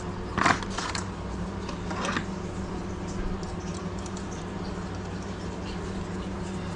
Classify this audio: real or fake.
real